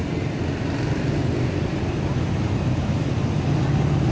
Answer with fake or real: real